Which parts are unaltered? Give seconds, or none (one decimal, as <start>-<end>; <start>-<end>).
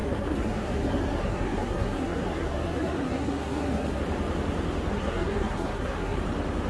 4.0-4.9; 6.2-6.7